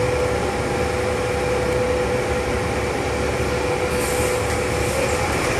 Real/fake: real